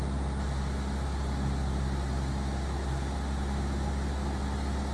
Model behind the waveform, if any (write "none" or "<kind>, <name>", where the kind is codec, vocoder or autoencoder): none